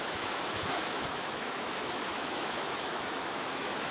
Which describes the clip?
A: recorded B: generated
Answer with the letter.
B